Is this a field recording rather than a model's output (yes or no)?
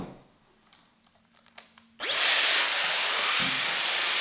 yes